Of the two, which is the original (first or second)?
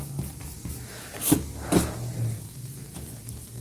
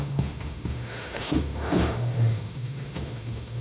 first